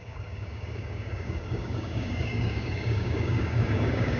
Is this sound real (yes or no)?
no